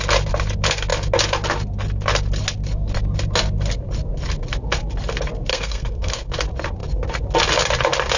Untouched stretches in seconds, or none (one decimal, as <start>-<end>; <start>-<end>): 0.0-5.5; 6.3-8.2